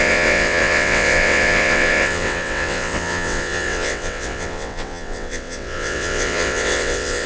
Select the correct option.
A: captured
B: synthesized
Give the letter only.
B